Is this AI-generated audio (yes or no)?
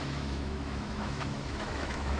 yes